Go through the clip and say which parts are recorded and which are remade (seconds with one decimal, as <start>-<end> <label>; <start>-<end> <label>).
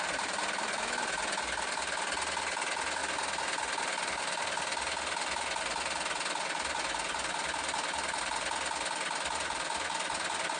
0.0-10.6 recorded